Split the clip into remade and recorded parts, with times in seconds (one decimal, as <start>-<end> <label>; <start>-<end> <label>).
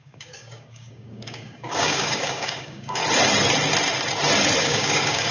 0.0-3.0 remade; 3.0-4.6 recorded; 4.6-5.3 remade